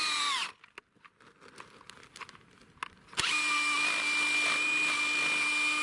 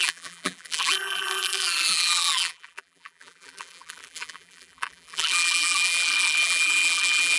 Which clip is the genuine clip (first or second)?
first